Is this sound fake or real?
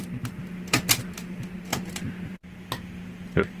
real